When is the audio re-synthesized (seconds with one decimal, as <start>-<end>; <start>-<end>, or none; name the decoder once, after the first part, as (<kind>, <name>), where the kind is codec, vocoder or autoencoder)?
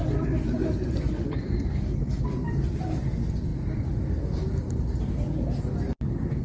0.0-2.0 (vocoder, BigVGAN v2)